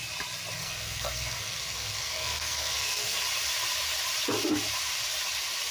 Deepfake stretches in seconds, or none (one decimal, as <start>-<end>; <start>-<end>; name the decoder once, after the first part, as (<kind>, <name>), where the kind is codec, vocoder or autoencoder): 0.6-3.2 (codec, SNAC)